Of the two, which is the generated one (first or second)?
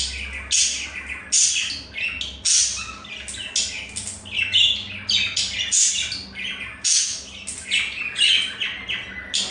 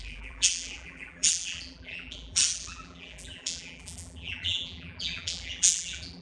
second